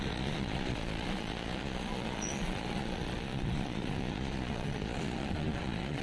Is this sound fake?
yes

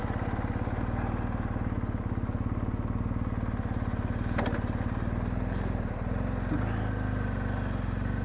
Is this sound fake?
no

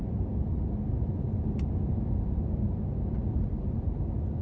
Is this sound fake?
no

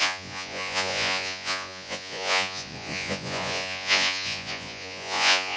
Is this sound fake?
yes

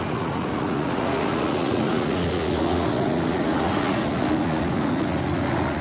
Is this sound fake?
yes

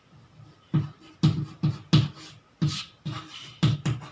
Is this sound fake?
no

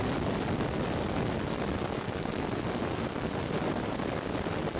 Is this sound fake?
no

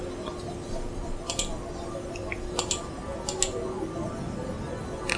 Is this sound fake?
no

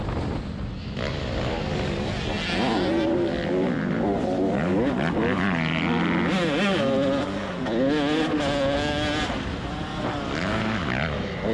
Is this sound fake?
no